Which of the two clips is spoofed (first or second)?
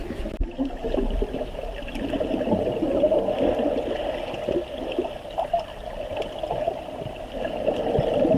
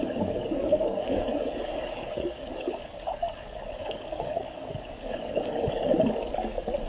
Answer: second